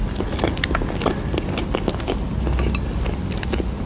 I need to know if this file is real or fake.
real